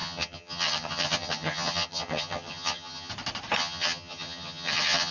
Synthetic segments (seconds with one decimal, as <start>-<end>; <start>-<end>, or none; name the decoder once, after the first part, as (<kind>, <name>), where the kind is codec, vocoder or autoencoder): 0.0-3.1 (vocoder, HiFi-GAN); 3.6-5.1